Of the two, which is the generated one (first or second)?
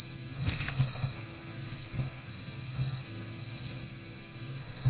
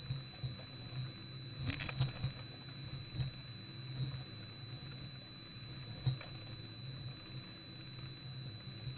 first